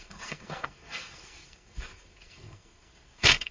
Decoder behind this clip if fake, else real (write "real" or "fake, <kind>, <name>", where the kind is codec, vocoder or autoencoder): fake, codec, SNAC